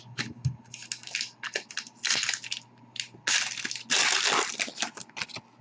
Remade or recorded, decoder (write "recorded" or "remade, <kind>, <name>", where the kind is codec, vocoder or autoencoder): recorded